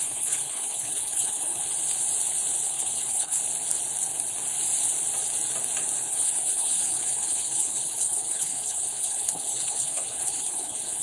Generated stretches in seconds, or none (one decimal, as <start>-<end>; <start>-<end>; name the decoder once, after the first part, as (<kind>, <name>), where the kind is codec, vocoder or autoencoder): 0.0-1.6 (codec, HILCodec); 2.7-3.4; 6.1-11.0